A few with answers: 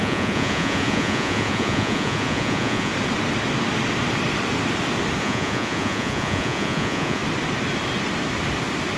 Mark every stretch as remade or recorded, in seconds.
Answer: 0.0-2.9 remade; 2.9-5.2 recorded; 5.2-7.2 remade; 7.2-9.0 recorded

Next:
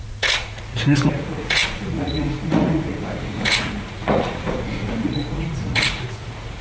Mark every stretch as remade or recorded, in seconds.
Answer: 0.0-6.6 remade